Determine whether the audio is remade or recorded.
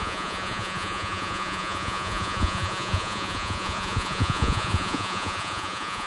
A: remade